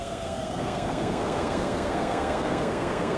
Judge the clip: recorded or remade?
remade